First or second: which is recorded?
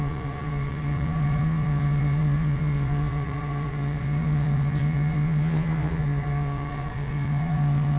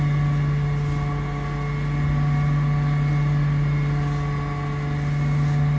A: second